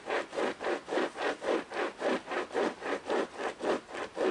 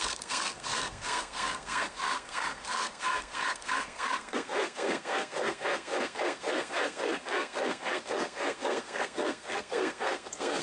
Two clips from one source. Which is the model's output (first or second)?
second